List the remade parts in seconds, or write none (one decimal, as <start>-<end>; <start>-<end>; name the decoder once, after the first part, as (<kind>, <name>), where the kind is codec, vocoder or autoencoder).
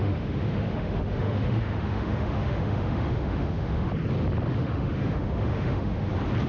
0.0-3.9 (autoencoder, DAC-VAE); 4.6-6.1